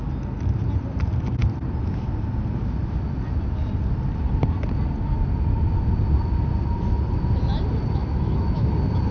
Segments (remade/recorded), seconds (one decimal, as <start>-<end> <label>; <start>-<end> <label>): 0.0-8.0 recorded; 8.0-8.7 remade; 8.7-9.1 recorded